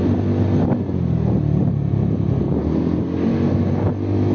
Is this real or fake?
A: real